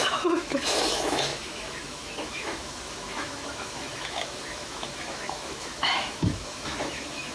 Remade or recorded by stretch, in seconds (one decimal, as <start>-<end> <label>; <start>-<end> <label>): 0.0-7.3 remade